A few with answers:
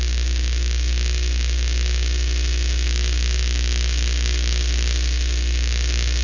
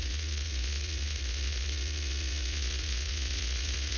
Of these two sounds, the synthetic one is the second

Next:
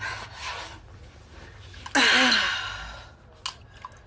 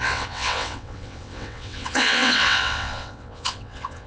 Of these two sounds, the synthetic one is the second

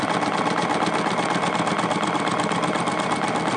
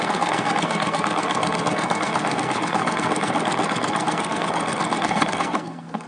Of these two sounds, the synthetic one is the second